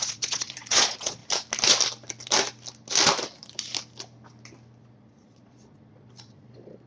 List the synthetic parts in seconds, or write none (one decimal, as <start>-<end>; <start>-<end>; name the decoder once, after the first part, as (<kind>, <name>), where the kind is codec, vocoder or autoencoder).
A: 0.0-1.2 (vocoder, Vocos); 4.8-6.9